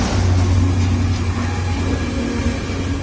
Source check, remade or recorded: recorded